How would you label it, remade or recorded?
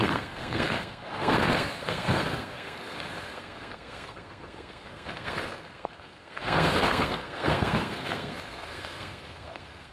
remade